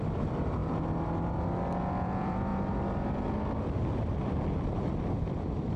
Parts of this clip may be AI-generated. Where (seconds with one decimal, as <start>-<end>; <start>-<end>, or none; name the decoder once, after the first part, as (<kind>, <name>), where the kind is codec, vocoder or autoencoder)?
0.0-0.6 (vocoder, BigVGAN v2); 1.8-2.5; 4.8-5.8